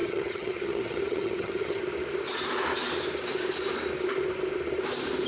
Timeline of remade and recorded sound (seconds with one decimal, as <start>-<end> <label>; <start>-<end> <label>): 0.0-1.8 remade; 1.8-5.3 recorded

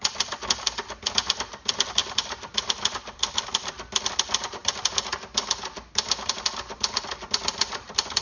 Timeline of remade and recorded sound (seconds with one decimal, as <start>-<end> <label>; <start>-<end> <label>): 0.0-8.2 recorded

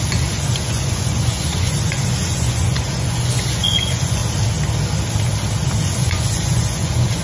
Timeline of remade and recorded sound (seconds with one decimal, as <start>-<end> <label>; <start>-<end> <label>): 0.0-4.2 remade; 4.2-5.8 recorded; 5.8-7.2 remade

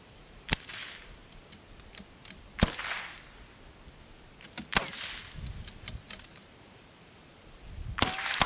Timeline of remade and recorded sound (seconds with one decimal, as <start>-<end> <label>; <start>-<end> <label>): 0.0-0.8 remade; 0.8-5.9 recorded; 5.9-8.5 remade

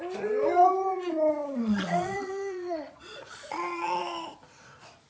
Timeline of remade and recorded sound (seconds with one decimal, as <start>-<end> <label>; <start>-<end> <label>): 0.0-1.4 recorded; 1.4-4.0 remade; 4.0-5.1 recorded

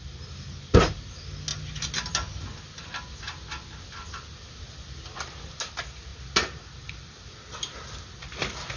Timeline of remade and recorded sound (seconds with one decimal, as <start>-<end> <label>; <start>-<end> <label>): 0.0-8.8 recorded

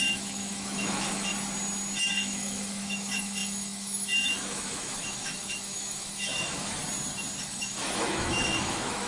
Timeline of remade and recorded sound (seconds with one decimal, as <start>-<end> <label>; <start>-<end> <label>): 0.0-1.3 remade; 1.3-2.1 recorded; 2.1-6.8 remade; 6.8-7.4 recorded; 7.4-9.1 remade

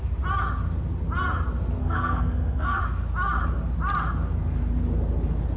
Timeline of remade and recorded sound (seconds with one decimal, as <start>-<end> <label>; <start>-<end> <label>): 0.0-1.8 recorded; 1.8-2.8 remade; 2.8-5.6 recorded